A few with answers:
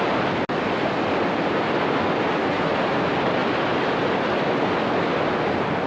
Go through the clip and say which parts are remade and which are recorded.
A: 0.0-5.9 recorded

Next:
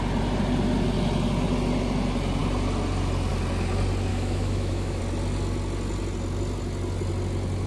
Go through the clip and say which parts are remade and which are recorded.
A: 0.0-4.1 recorded; 4.1-5.0 remade; 5.0-7.7 recorded